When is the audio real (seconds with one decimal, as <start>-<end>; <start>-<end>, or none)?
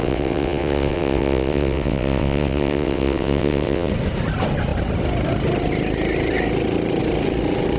3.9-7.8